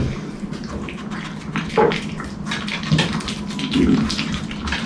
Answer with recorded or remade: recorded